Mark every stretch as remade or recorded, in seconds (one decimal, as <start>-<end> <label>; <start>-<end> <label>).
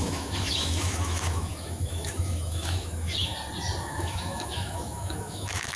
0.0-3.3 remade; 3.3-3.8 recorded; 3.8-5.8 remade